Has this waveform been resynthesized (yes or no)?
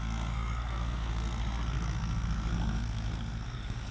yes